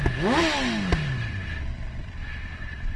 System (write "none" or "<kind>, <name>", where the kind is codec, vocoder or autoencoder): none